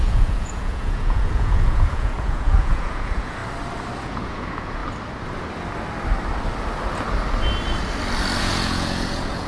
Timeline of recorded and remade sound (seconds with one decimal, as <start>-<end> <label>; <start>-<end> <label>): 0.0-3.4 remade; 3.4-4.0 recorded; 4.0-4.8 remade; 4.8-8.4 recorded; 8.4-9.5 remade